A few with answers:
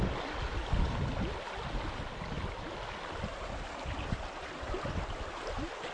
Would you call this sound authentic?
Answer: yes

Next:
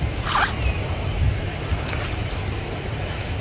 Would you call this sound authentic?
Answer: yes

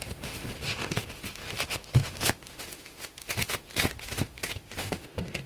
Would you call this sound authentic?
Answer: no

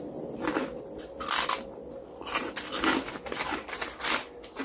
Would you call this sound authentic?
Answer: yes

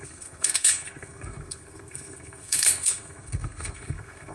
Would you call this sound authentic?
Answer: no